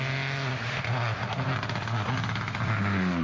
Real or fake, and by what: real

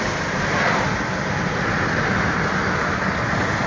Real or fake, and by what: real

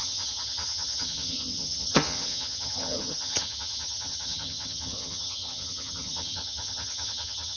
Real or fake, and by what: fake, vocoder, HiFi-GAN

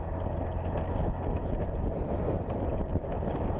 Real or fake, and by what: real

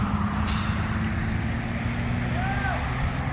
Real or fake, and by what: real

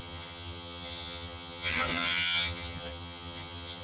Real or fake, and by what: fake, vocoder, HiFi-GAN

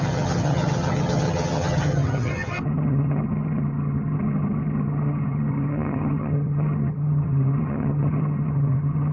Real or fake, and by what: fake, vocoder, HiFi-GAN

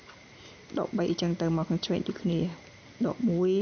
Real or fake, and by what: real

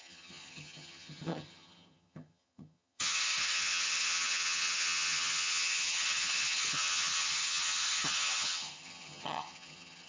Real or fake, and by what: fake, vocoder, HiFi-GAN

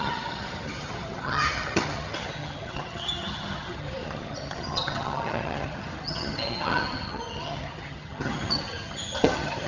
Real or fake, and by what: fake, vocoder, HiFi-GAN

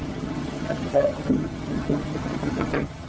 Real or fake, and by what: fake, vocoder, HiFi-GAN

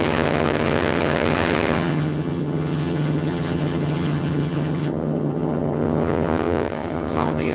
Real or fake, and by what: fake, vocoder, HiFi-GAN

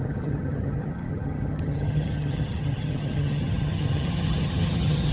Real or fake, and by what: fake, vocoder, HiFi-GAN